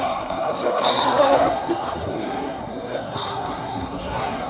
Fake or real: fake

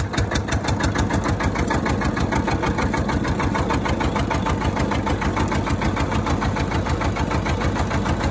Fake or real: real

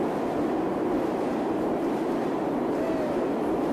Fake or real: real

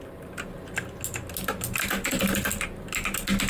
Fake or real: real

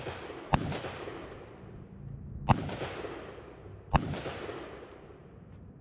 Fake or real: real